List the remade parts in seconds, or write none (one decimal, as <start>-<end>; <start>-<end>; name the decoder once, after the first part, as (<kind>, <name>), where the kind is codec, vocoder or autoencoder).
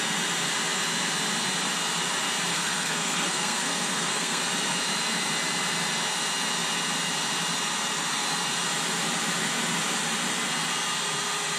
2.5-4.4 (codec, SNAC)